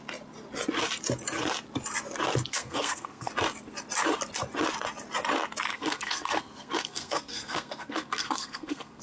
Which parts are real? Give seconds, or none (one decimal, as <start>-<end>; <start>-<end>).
0.0-2.5; 3.3-5.7